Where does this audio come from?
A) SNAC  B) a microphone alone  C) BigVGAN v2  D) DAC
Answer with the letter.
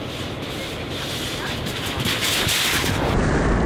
B